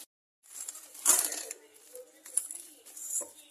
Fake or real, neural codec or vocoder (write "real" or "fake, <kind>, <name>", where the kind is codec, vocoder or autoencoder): real